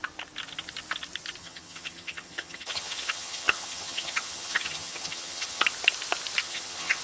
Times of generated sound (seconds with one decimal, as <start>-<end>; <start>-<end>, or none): 1.4-5.6; 6.4-7.0